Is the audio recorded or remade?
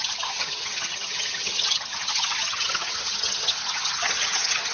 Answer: remade